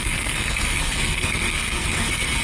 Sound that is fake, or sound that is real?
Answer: fake